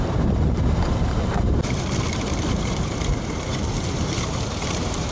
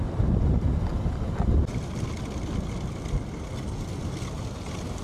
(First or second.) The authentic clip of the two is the second